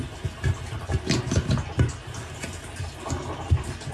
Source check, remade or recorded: recorded